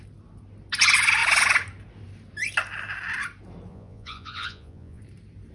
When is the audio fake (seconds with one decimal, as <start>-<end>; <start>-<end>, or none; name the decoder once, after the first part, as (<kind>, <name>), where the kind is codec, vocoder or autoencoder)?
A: 3.7-5.0 (vocoder, Vocos)